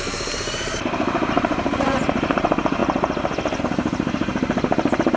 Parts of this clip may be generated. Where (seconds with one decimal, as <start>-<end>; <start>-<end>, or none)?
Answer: 0.0-2.8; 3.6-5.2